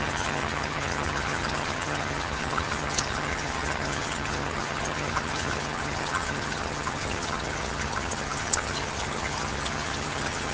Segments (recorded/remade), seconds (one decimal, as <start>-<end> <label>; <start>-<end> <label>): 0.0-10.5 remade